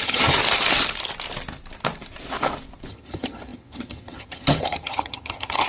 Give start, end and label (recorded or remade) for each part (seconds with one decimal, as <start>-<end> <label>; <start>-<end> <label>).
0.0-0.4 remade; 0.4-2.9 recorded; 2.9-5.7 remade